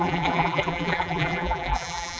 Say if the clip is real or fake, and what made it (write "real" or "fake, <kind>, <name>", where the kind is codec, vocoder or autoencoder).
fake, vocoder, BigVGAN v2